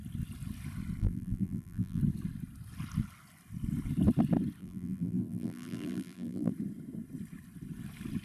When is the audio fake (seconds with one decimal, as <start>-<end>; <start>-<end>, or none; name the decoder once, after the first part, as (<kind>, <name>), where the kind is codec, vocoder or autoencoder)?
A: 1.0-2.0 (vocoder, BigVGAN v2); 4.6-6.5